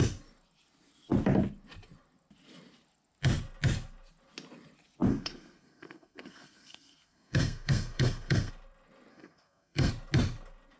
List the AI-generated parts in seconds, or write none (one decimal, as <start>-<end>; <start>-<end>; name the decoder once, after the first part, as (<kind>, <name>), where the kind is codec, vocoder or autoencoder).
5.1-8.5 (codec, SNAC); 9.1-9.9